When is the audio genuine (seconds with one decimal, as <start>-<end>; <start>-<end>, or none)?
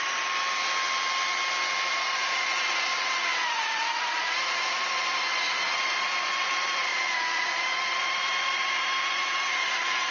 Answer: 0.0-1.9